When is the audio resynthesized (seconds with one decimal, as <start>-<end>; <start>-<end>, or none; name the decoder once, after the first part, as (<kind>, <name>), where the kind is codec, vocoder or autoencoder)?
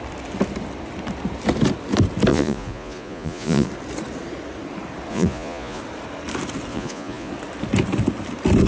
2.3-3.7 (vocoder, Vocos); 5.1-5.8; 6.7-7.3